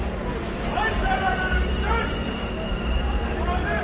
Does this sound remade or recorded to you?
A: recorded